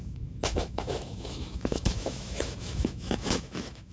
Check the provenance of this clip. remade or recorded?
remade